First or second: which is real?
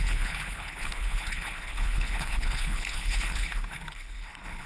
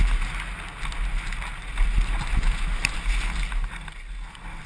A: second